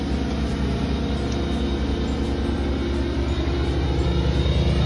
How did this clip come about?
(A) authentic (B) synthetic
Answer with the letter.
A